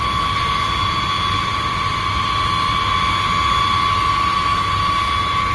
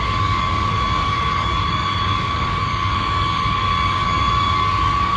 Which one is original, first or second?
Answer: first